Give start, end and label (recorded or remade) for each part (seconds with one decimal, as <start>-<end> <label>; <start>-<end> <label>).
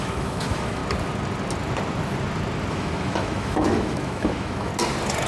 0.0-0.8 remade; 0.8-2.7 recorded; 2.7-4.7 remade; 4.7-5.3 recorded